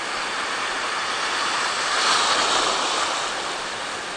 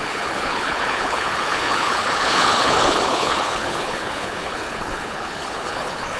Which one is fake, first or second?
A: second